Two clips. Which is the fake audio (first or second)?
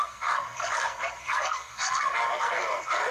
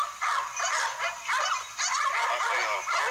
first